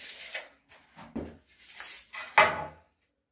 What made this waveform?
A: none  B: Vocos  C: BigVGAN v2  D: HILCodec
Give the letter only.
A